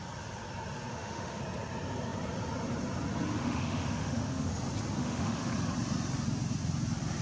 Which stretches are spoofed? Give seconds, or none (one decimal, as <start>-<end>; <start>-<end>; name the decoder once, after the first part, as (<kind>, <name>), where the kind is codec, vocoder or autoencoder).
0.9-1.4 (autoencoder, DAC-VAE); 3.3-4.5; 5.0-5.5